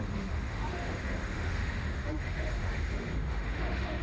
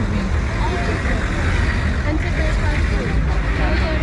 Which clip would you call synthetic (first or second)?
first